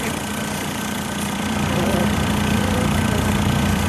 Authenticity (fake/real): fake